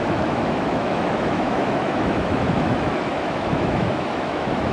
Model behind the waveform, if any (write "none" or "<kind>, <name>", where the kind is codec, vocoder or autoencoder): autoencoder, DAC-VAE